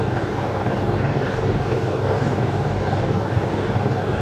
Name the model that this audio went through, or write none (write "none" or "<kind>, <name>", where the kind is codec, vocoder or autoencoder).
codec, DAC